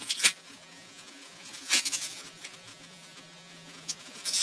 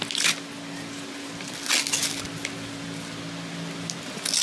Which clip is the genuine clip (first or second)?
second